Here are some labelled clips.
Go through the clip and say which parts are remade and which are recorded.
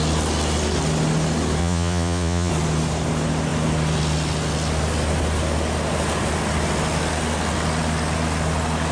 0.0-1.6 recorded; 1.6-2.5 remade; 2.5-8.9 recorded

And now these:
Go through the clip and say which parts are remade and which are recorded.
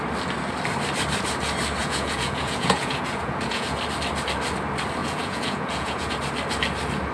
0.0-1.8 recorded; 1.8-3.8 remade; 3.8-5.0 recorded; 5.0-6.1 remade; 6.1-7.1 recorded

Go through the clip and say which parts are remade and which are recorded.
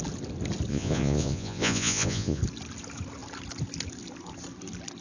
0.0-0.7 recorded; 0.7-2.4 remade; 2.4-5.0 recorded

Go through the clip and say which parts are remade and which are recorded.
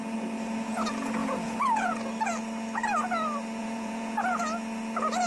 0.0-1.2 recorded; 1.2-1.9 remade; 1.9-3.6 recorded; 3.6-4.4 remade; 4.4-5.3 recorded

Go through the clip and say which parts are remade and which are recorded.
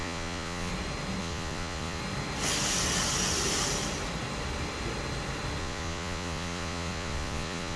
0.0-0.7 remade; 0.7-1.2 recorded; 1.2-2.0 remade; 2.0-5.6 recorded; 5.6-7.8 remade